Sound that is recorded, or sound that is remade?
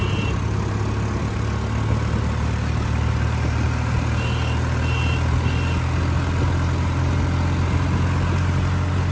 recorded